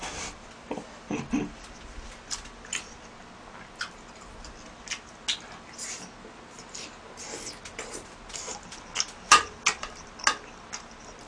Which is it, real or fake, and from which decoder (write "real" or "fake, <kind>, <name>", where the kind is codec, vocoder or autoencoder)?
real